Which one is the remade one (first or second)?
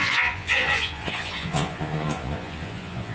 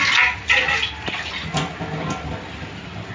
first